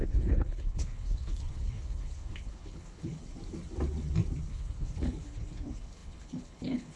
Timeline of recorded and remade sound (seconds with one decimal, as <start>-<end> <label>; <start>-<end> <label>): 0.0-3.2 remade; 3.2-4.5 recorded; 4.5-7.0 remade